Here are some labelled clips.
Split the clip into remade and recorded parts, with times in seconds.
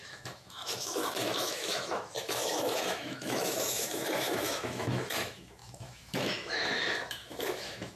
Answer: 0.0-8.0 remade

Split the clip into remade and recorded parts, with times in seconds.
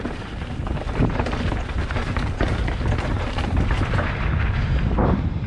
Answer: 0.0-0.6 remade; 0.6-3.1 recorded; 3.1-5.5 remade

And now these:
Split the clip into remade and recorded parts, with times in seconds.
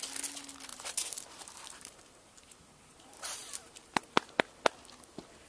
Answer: 0.0-0.7 recorded; 0.7-4.0 remade; 4.0-5.5 recorded